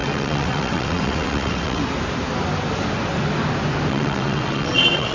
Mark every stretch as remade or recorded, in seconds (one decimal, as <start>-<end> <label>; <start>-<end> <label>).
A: 0.0-1.8 remade; 1.8-3.9 recorded; 3.9-5.1 remade